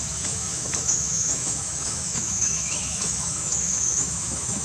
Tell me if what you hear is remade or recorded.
remade